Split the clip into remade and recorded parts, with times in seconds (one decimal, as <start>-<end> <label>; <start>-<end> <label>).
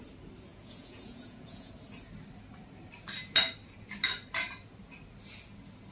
0.0-0.5 recorded; 0.5-1.7 remade; 1.7-5.9 recorded